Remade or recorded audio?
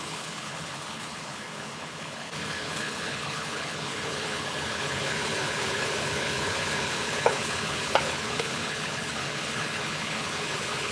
remade